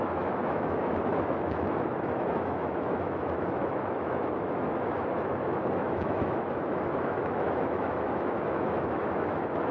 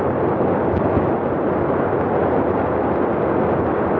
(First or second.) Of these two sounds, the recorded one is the second